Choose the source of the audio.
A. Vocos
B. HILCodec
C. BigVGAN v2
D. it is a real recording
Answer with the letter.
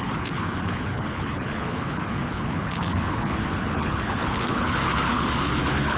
B